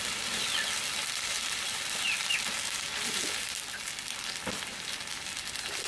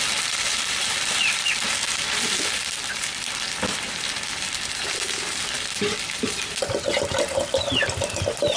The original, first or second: first